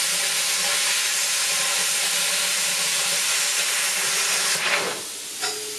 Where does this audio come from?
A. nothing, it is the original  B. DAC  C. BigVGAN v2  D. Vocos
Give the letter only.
A